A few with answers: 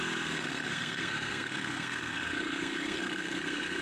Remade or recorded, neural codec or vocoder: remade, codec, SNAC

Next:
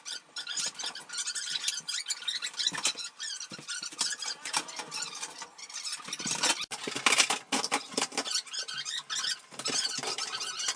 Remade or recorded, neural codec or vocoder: recorded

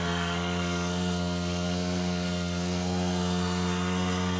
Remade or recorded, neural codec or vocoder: remade, codec, SNAC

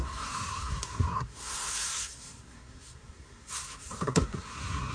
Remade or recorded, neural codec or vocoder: remade, codec, SNAC